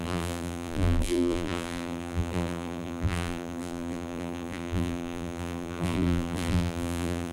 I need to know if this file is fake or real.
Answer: fake